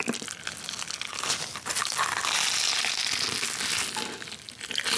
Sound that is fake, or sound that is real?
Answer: real